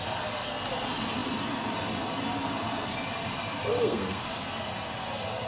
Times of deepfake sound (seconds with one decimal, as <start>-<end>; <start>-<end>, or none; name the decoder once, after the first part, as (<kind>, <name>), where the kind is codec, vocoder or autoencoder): 3.7-4.2 (codec, SNAC)

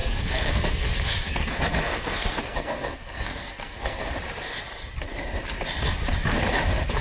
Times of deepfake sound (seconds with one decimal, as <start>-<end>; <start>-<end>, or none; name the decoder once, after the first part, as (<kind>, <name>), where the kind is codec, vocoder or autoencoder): 0.0-4.1 (codec, SNAC)

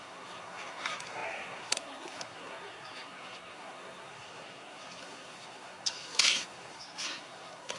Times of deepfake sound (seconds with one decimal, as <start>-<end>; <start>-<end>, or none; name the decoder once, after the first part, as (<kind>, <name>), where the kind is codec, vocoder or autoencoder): 0.0-7.8 (codec, SNAC)

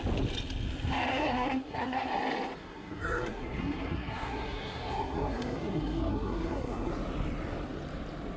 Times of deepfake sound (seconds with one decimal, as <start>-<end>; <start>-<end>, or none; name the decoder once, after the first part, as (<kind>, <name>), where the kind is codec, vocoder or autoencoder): 1.1-2.1 (codec, SNAC); 2.6-6.9

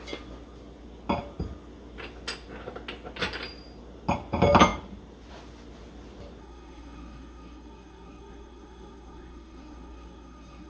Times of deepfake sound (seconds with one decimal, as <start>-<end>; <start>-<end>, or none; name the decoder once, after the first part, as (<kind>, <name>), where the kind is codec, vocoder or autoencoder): 6.4-10.7 (codec, SNAC)

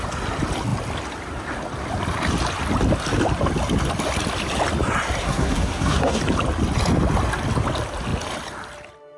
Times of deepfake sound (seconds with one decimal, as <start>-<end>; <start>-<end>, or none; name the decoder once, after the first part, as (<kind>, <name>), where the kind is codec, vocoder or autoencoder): 5.2-6.2 (codec, SNAC)

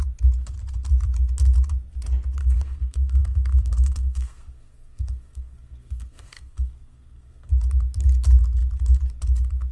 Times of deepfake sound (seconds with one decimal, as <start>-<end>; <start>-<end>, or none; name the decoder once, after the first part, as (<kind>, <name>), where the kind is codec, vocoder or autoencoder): 2.4-7.5 (codec, SNAC)

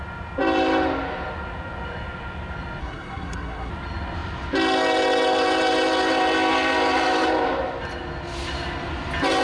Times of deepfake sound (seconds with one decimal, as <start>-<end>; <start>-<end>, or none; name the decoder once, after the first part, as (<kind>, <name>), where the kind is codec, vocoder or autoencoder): 2.8-3.7 (codec, SNAC)